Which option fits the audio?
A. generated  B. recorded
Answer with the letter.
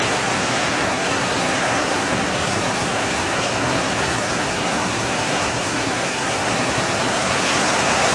A